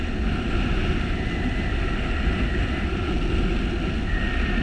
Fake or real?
real